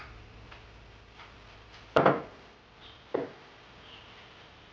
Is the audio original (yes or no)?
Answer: yes